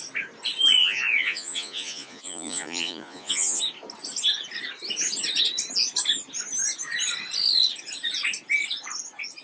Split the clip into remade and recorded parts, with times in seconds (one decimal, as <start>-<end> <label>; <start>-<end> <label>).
0.0-0.8 recorded; 0.8-3.6 remade; 3.6-9.4 recorded